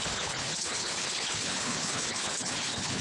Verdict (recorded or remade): remade